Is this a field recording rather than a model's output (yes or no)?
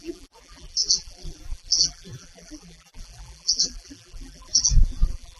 no